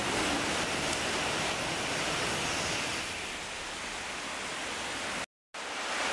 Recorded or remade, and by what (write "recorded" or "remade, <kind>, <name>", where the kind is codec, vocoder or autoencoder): recorded